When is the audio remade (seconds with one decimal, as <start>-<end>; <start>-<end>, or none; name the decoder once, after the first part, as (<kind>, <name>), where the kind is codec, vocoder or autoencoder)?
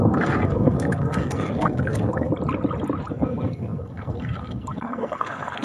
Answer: 0.0-2.3 (codec, SNAC); 3.1-5.6